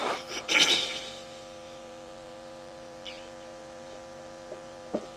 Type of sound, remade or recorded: remade